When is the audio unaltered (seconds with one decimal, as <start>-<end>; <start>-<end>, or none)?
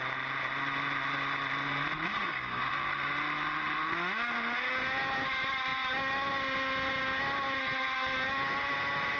0.0-2.1; 2.7-9.2